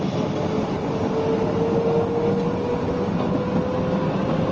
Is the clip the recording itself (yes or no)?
yes